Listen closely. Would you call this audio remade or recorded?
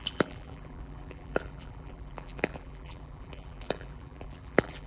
remade